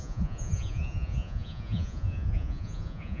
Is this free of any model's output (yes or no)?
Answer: no